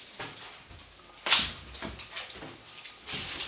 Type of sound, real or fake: real